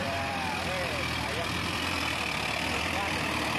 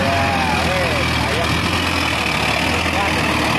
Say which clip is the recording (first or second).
second